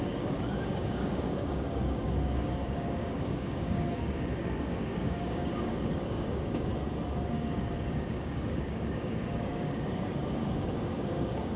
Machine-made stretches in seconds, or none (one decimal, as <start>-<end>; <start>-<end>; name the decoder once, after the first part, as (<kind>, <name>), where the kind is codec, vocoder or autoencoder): 0.0-6.7 (codec, DAC); 7.3-11.6

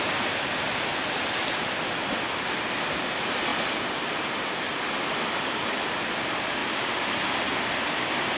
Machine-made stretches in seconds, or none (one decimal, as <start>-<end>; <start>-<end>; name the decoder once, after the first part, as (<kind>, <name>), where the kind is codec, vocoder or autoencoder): none